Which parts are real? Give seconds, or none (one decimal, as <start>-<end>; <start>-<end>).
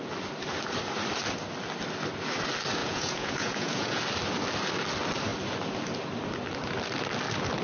0.0-2.8; 4.0-7.6